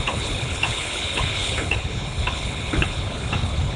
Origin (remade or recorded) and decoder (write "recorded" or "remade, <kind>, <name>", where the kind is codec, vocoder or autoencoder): remade, codec, HILCodec